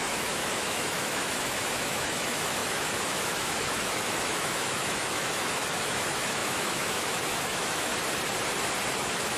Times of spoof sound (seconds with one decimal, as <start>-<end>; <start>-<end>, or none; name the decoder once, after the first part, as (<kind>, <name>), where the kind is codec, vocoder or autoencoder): 0.0-7.9 (autoencoder, DAC-VAE); 8.9-9.4

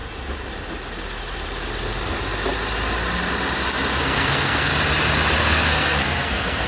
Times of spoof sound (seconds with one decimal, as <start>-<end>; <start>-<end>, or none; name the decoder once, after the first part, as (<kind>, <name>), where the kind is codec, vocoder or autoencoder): 4.0-4.7 (codec, SNAC); 5.4-6.7

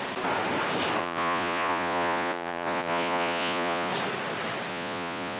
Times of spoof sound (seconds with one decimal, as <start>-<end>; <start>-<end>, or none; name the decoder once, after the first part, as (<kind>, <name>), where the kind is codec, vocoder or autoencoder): 1.0-3.9 (vocoder, Vocos); 4.7-5.4

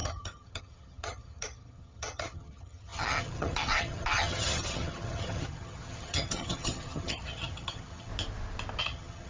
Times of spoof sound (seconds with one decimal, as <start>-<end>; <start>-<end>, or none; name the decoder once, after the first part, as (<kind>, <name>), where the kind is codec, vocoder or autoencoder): 0.0-8.1 (vocoder, HiFi-GAN); 8.8-9.3

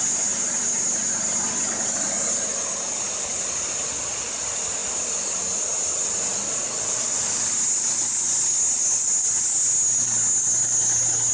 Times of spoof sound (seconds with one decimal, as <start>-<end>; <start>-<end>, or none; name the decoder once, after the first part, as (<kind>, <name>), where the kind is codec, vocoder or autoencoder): none

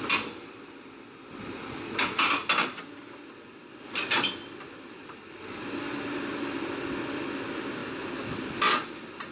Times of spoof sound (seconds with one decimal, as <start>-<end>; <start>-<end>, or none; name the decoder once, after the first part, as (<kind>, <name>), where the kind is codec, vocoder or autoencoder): none

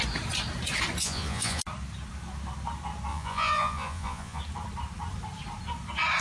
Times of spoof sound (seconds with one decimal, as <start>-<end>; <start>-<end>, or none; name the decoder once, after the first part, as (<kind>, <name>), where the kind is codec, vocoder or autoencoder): 1.0-1.6 (vocoder, Vocos); 3.1-4.4

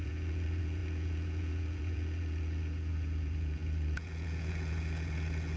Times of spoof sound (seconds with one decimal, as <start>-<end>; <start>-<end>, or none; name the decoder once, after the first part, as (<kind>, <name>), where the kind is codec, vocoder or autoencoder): 0.0-5.6 (vocoder, Vocos)